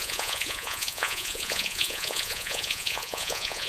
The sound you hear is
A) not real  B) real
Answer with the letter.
A